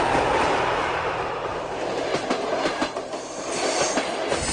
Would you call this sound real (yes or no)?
yes